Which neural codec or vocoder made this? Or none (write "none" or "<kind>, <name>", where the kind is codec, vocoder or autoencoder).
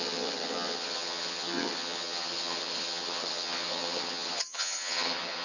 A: vocoder, HiFi-GAN